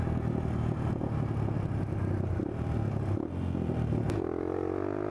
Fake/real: real